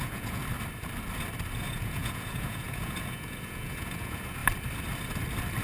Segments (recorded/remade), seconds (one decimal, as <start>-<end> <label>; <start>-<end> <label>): 0.0-0.4 remade; 0.4-1.6 recorded; 1.6-4.4 remade; 4.4-5.6 recorded